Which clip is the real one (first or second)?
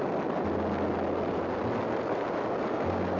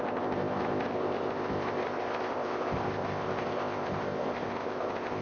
first